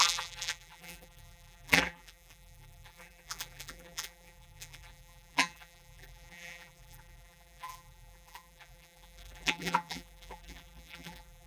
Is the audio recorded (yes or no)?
no